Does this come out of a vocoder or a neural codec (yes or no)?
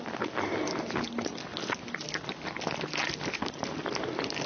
no